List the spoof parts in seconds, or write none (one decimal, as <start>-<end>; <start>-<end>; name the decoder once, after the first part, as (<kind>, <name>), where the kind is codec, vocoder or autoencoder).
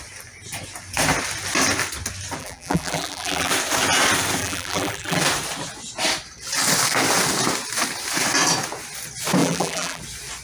2.4-3.5 (vocoder, BigVGAN v2); 4.4-5.2; 9.4-10.0